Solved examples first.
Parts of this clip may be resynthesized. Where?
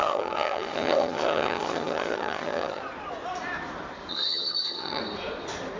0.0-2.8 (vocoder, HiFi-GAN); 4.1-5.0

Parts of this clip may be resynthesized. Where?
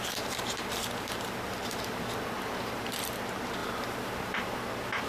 0.0-3.1 (vocoder, BigVGAN v2); 3.6-4.6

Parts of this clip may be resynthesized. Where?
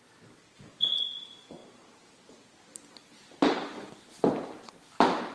0.0-5.3 (vocoder, BigVGAN v2)